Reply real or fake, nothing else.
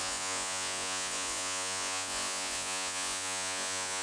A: fake